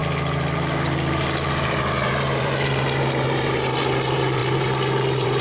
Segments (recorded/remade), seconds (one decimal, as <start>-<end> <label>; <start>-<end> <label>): 0.0-1.5 recorded; 1.5-5.4 remade